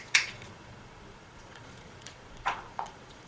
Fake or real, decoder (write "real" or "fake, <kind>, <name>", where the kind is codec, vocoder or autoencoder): fake, vocoder, Vocos